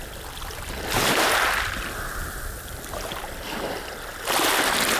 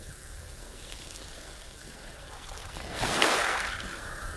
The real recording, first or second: first